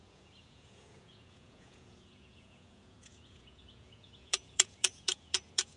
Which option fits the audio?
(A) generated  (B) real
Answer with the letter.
A